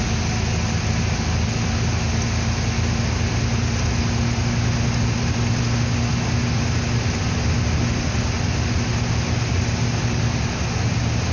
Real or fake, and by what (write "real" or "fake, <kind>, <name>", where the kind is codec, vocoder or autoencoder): real